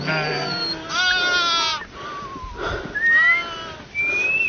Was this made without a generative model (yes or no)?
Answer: yes